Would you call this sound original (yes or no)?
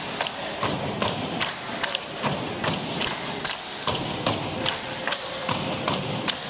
yes